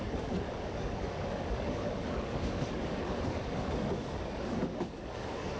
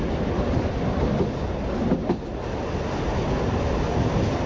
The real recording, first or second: second